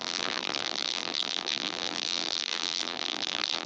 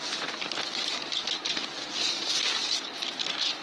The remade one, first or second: first